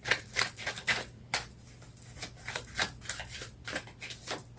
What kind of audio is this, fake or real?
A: real